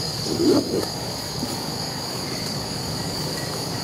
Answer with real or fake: fake